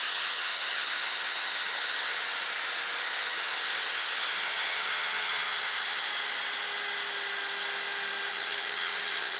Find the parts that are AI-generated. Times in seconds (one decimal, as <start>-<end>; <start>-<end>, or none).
0.0-2.2; 3.0-6.1; 8.3-9.4